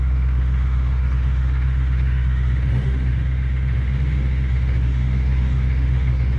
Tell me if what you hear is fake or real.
fake